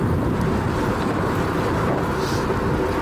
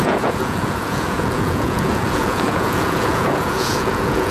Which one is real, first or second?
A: first